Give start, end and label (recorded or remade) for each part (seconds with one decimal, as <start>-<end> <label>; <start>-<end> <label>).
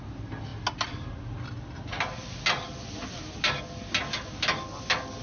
0.0-5.2 recorded